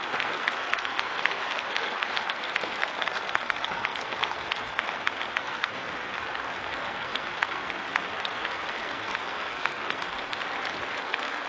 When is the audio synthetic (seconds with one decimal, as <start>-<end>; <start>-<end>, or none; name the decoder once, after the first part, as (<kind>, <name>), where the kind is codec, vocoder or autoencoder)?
0.0-10.4 (codec, SNAC); 11.0-11.5